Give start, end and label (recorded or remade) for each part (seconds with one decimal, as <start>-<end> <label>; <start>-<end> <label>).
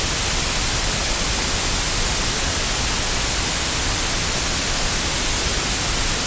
0.0-6.3 recorded